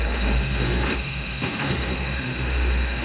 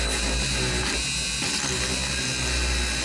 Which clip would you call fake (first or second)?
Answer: first